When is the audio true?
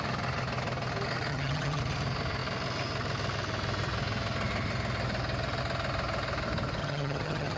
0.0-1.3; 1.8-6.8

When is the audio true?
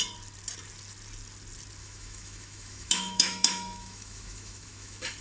0.0-1.8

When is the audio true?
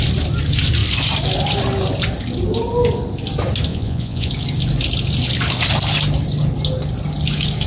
0.0-3.7; 4.3-7.7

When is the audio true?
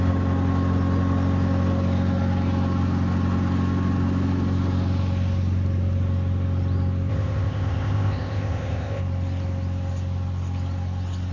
0.0-7.1; 9.0-11.3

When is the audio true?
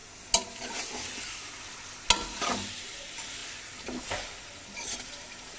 0.0-5.6